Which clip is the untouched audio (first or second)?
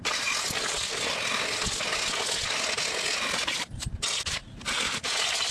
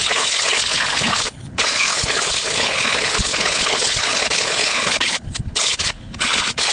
first